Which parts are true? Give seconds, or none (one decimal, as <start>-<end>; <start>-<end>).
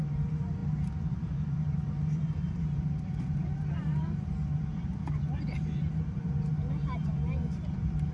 none